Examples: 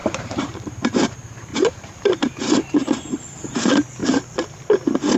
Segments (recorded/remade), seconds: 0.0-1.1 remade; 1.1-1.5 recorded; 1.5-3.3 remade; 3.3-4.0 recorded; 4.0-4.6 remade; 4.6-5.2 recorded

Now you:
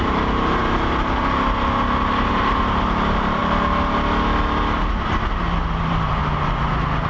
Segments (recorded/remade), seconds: 0.0-0.6 remade; 0.6-2.3 recorded; 2.3-3.4 remade; 3.4-5.8 recorded; 5.8-6.2 remade; 6.2-7.1 recorded

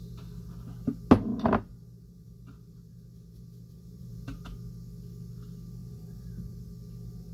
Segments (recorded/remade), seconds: 0.0-1.3 recorded; 1.3-4.1 remade; 4.1-5.8 recorded; 5.8-6.3 remade; 6.3-7.3 recorded

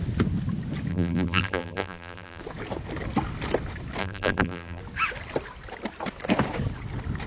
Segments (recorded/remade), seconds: 0.0-0.9 recorded; 0.9-2.4 remade; 2.4-4.0 recorded; 4.0-4.8 remade; 4.8-7.3 recorded

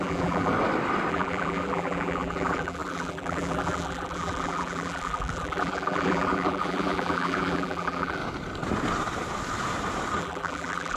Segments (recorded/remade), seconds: 0.0-0.5 remade; 0.5-1.1 recorded; 1.1-8.2 remade; 8.2-10.2 recorded; 10.2-11.0 remade

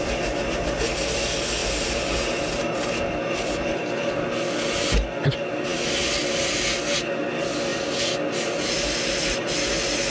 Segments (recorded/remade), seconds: 0.0-1.6 recorded; 1.6-4.1 remade; 4.1-10.1 recorded

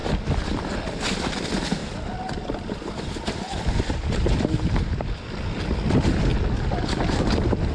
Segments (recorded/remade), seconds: 0.0-1.8 remade; 1.8-2.6 recorded; 2.6-6.3 remade; 6.3-7.3 recorded; 7.3-7.7 remade